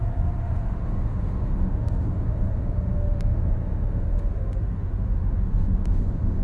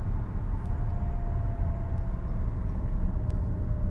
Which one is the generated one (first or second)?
first